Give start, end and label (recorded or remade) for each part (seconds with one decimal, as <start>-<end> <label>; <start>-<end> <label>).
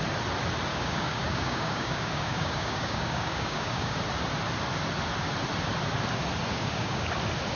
0.0-0.7 recorded; 0.7-4.0 remade; 4.0-6.5 recorded; 6.5-7.1 remade; 7.1-7.6 recorded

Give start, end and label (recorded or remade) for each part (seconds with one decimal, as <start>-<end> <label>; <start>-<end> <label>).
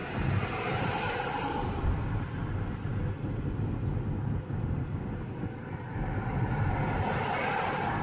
0.0-8.0 recorded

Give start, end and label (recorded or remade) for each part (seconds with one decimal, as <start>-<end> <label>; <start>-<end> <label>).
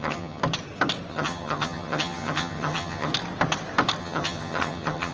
0.0-0.4 remade; 0.4-1.1 recorded; 1.1-3.1 remade; 3.1-4.0 recorded; 4.0-5.1 remade